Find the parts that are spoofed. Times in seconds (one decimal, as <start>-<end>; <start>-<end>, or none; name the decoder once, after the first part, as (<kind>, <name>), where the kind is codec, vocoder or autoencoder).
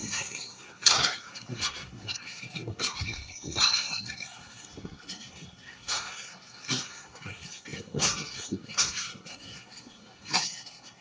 0.0-11.0 (codec, SNAC)